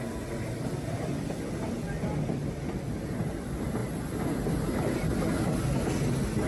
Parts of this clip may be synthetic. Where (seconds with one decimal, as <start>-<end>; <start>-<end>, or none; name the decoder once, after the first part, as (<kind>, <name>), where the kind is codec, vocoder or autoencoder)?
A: none